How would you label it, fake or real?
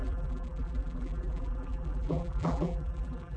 fake